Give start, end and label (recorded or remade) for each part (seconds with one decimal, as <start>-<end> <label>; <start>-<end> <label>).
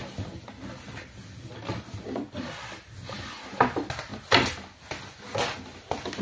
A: 0.0-6.2 recorded